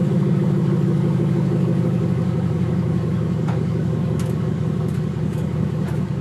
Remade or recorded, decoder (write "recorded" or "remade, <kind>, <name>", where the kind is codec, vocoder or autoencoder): remade, codec, DAC